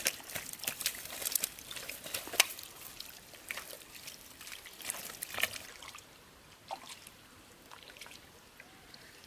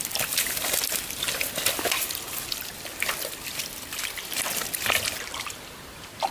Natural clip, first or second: second